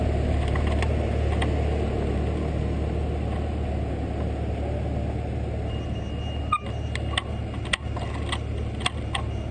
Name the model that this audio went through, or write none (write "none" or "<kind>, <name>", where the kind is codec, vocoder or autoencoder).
none